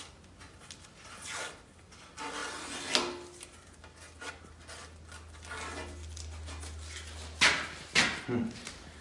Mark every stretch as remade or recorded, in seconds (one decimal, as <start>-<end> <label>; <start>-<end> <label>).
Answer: 0.0-9.0 recorded

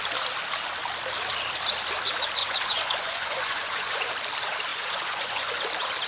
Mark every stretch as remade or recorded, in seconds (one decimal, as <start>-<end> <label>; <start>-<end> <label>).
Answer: 0.0-2.4 recorded; 2.4-4.1 remade; 4.1-4.7 recorded; 4.7-5.5 remade; 5.5-6.1 recorded

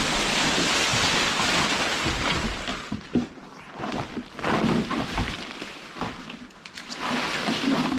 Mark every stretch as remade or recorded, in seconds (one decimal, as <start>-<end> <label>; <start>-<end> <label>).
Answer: 0.0-2.7 remade; 2.7-6.9 recorded; 6.9-8.0 remade